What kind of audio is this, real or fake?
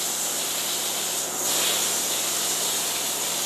real